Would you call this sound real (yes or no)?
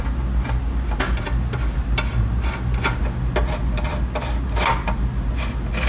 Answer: yes